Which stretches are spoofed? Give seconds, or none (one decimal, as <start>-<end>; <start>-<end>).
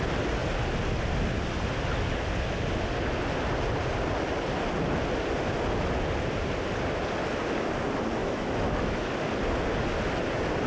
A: 8.2-9.1